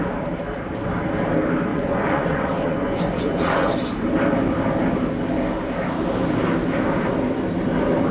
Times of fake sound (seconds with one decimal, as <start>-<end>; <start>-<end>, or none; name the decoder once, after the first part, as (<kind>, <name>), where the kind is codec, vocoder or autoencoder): 1.7-3.7 (vocoder, Vocos)